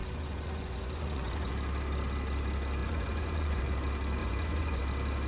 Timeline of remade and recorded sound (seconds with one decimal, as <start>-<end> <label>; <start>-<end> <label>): 0.0-1.5 remade; 1.5-2.8 recorded; 2.8-3.6 remade; 3.6-4.2 recorded; 4.2-4.8 remade; 4.8-5.3 recorded